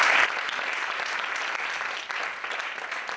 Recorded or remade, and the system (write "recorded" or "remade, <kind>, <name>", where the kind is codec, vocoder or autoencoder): recorded